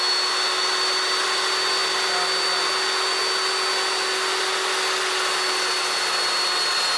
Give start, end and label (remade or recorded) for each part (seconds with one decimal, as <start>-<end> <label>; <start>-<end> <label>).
0.0-7.0 recorded